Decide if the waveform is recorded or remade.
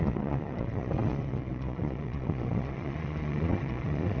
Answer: remade